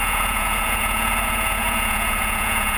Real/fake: fake